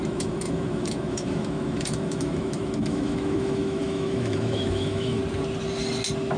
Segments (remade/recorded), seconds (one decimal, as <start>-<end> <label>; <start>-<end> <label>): 0.0-5.2 remade; 5.2-6.4 recorded